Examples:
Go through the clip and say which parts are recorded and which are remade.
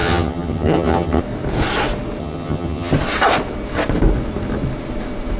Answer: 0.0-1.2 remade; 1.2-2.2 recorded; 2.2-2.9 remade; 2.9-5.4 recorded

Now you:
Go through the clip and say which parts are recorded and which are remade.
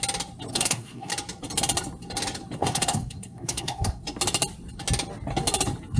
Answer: 0.0-0.5 recorded; 0.5-1.1 remade; 1.1-2.6 recorded; 2.6-4.0 remade; 4.0-6.0 recorded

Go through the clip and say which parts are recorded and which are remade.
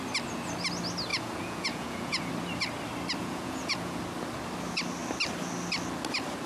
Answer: 0.0-1.1 recorded; 1.1-2.3 remade; 2.3-3.2 recorded; 3.2-4.0 remade; 4.0-6.5 recorded